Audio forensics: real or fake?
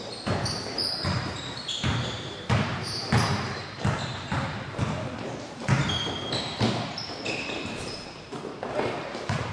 fake